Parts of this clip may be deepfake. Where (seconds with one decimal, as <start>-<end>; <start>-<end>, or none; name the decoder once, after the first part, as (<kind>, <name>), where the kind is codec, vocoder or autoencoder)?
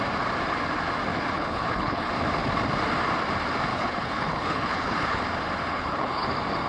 1.1-2.1 (codec, HILCodec); 3.7-5.2; 5.7-6.3